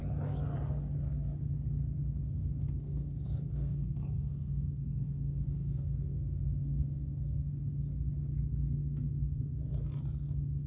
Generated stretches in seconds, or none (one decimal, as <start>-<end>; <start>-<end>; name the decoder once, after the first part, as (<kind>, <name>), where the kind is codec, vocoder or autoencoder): 2.4-7.6 (codec, SNAC); 8.8-9.6